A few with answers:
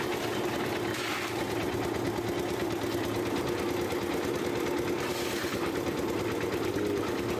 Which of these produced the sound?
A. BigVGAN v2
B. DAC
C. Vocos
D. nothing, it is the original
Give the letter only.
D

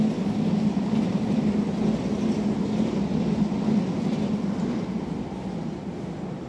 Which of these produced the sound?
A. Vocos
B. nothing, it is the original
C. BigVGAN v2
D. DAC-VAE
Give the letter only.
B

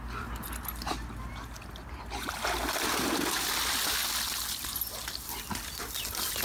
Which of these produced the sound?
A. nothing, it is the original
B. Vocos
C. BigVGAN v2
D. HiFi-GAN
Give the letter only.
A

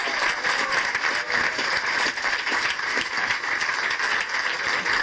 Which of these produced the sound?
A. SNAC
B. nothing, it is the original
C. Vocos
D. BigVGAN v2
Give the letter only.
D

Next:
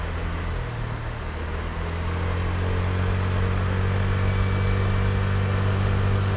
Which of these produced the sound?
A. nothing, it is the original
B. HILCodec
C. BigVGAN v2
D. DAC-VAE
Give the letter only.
A